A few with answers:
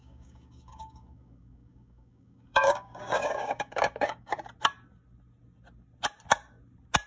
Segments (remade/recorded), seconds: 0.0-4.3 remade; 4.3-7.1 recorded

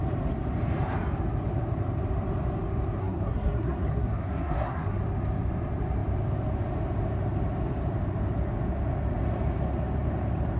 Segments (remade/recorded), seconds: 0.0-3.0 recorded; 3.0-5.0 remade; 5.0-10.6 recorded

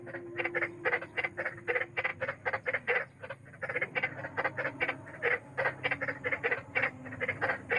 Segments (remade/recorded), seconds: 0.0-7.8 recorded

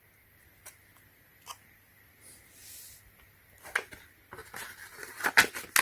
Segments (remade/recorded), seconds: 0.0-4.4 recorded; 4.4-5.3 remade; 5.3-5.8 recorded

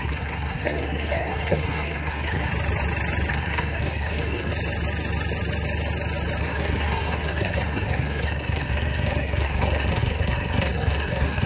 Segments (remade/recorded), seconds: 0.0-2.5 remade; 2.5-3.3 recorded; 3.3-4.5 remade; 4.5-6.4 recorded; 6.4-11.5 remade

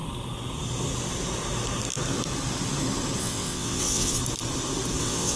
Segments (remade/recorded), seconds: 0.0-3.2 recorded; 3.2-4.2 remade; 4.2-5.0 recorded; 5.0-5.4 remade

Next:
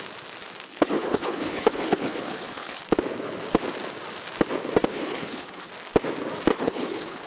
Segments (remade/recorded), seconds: 0.0-0.7 recorded; 0.7-2.8 remade; 2.8-4.9 recorded; 4.9-5.7 remade; 5.7-6.5 recorded; 6.5-7.3 remade